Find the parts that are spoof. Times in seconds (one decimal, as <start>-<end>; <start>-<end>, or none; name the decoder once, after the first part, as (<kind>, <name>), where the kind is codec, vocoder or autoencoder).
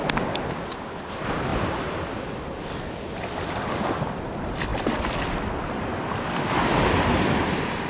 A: 4.7-7.9 (vocoder, BigVGAN v2)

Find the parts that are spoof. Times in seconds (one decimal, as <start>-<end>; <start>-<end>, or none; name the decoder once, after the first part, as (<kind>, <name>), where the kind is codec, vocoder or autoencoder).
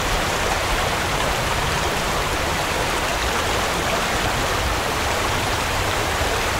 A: 0.0-3.1 (vocoder, BigVGAN v2); 4.8-6.6